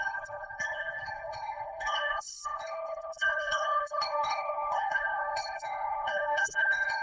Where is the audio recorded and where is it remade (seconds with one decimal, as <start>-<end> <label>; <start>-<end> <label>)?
0.0-7.0 remade